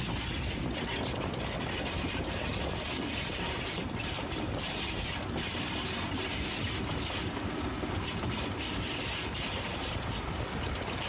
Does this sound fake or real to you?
real